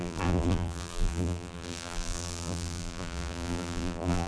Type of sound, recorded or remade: remade